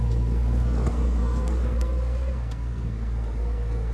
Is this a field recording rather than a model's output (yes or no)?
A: no